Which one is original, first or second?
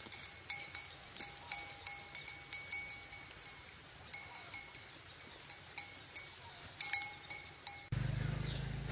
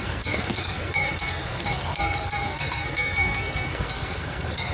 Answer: first